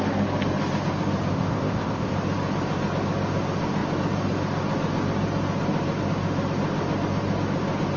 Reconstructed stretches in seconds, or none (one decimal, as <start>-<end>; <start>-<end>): 1.3-2.1